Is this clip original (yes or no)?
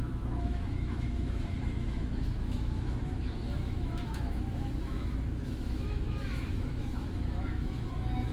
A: no